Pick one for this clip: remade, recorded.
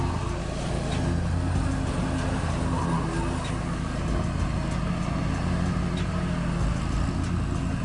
recorded